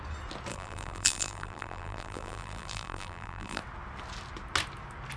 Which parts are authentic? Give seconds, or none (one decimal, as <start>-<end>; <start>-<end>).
0.0-0.5; 3.6-5.2

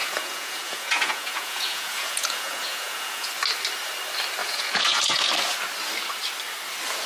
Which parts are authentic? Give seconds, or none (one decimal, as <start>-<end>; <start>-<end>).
3.3-4.4; 5.3-7.1

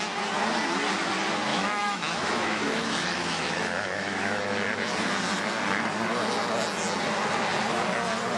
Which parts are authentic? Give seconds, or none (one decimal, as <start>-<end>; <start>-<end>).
0.0-1.5; 4.4-8.4

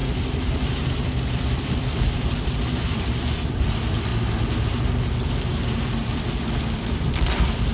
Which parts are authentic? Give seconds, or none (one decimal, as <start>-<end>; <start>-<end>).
4.1-5.5